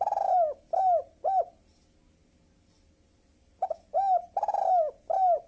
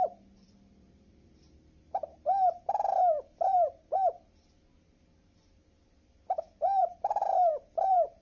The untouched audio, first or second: first